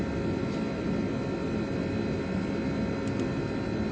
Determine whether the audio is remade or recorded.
recorded